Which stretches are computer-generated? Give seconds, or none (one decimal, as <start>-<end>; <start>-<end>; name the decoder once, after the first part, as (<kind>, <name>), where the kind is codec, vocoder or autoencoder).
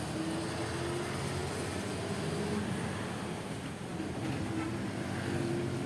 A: none